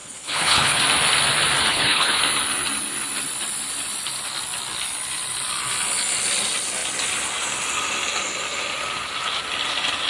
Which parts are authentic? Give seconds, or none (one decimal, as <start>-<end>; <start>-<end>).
0.8-1.7; 2.2-10.1